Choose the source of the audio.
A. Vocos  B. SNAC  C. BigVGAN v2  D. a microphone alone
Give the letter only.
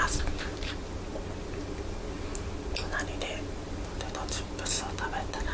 D